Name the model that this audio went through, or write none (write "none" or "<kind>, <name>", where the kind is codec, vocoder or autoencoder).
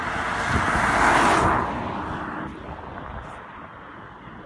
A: none